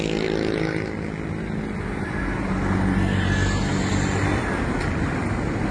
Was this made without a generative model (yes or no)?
yes